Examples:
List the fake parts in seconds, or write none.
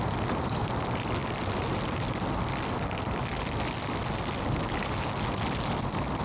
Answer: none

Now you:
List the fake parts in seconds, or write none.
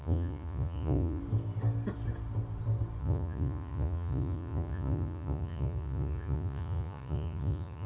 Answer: 0.0-1.2 (vocoder, Vocos); 3.0-7.9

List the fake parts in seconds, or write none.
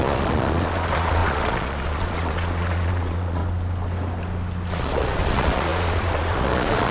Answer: 0.0-3.4 (vocoder, Vocos); 4.7-6.9